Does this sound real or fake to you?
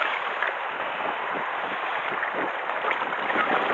real